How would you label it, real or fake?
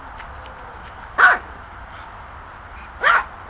real